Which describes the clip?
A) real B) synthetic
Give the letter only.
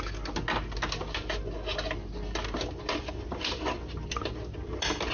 A